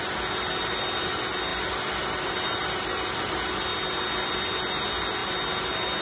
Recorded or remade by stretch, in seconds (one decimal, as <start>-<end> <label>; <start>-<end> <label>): 0.0-6.0 recorded